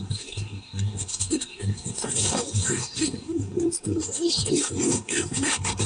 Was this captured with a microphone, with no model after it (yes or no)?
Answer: no